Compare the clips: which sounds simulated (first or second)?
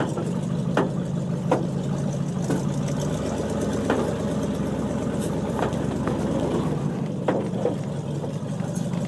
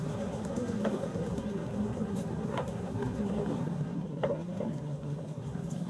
second